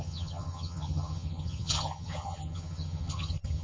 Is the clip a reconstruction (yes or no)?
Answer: yes